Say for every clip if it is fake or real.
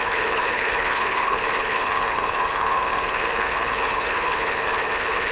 fake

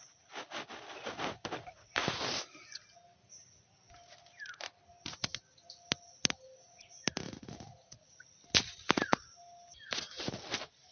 real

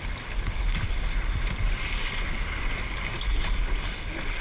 real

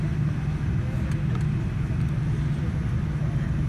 real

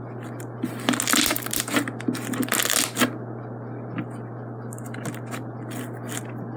real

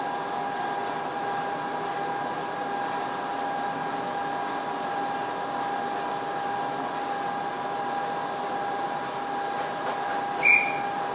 real